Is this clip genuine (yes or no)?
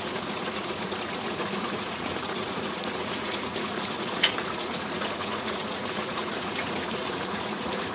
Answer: no